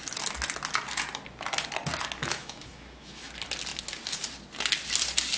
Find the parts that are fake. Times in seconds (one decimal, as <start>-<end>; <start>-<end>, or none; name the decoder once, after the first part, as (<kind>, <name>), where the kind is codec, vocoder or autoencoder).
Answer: 2.2-3.3 (autoencoder, DAC-VAE)